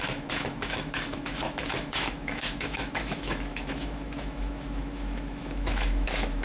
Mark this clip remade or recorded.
remade